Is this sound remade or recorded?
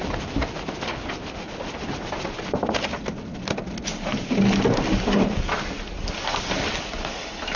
recorded